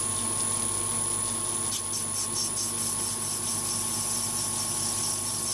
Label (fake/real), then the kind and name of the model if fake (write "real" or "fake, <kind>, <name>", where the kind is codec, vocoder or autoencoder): real